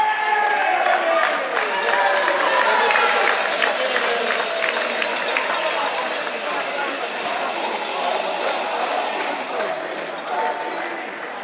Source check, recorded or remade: recorded